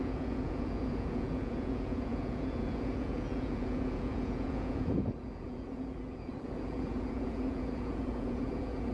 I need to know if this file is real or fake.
fake